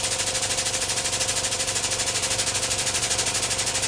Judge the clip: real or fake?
fake